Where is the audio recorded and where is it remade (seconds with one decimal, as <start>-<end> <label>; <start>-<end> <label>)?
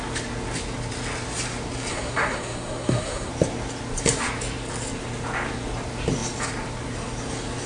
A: 0.0-1.9 recorded; 1.9-3.3 remade; 3.3-7.7 recorded